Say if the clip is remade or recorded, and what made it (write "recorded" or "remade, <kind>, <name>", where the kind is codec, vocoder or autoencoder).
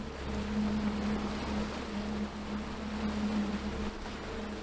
recorded